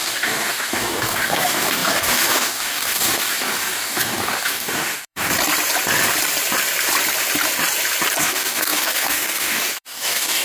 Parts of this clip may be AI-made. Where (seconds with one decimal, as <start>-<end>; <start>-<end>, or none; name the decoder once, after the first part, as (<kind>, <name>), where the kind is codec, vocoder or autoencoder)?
0.0-5.3 (codec, DAC); 8.2-10.4

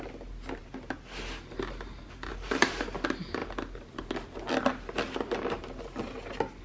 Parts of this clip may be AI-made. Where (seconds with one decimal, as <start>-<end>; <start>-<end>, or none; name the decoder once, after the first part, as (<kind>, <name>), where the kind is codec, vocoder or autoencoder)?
none

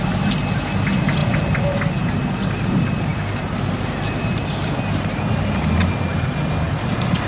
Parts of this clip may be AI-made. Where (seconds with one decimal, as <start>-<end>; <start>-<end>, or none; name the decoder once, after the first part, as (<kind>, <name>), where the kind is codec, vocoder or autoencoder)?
none